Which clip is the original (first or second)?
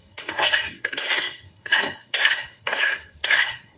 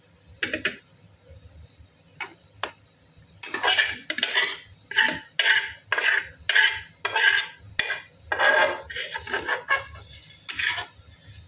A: second